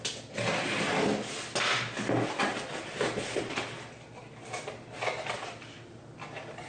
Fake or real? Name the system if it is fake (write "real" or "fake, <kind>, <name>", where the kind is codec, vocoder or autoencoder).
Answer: real